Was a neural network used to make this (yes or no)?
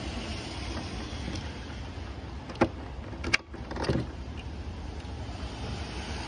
no